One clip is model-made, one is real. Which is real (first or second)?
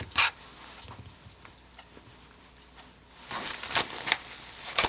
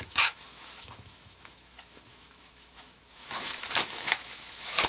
first